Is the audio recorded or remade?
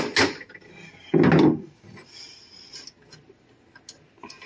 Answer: recorded